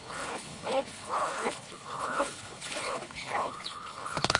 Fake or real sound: fake